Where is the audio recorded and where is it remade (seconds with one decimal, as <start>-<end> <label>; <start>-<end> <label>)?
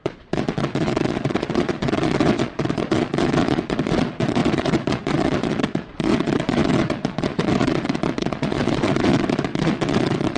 0.0-10.4 remade